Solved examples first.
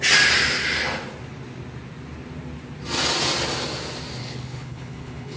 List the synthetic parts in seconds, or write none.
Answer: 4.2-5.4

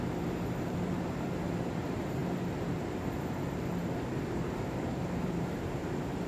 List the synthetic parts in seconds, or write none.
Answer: 0.0-6.3

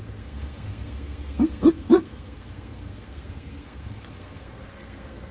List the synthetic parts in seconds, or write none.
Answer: 0.0-5.3